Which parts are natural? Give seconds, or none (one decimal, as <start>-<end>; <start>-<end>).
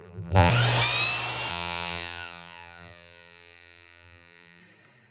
0.5-1.5; 4.6-5.1